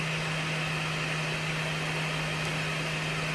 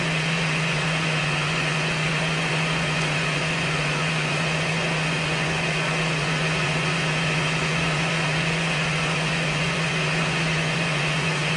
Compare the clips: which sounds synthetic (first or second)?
second